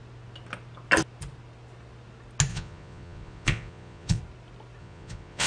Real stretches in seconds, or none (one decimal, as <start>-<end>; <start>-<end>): 0.0-2.5; 4.2-4.8